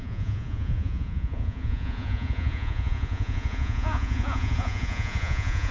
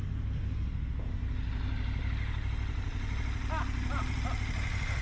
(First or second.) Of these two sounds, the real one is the second